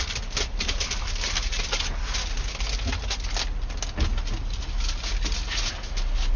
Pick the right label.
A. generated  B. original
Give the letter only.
B